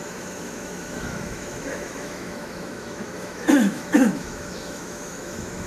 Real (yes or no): no